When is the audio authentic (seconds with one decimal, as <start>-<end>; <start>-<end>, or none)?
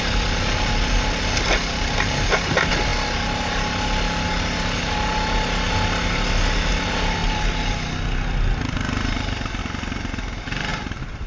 0.0-10.7